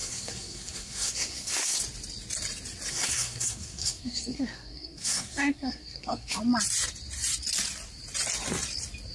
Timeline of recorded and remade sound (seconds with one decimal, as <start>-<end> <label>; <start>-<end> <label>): 0.0-1.8 remade; 1.8-2.9 recorded; 2.9-6.4 remade; 6.4-9.1 recorded